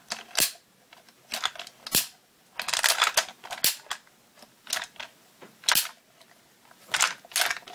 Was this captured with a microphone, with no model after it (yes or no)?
yes